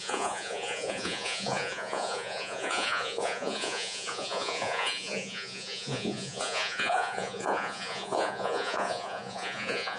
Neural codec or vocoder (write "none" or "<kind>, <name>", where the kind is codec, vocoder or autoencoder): vocoder, Vocos